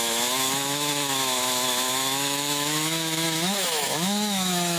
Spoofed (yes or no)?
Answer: yes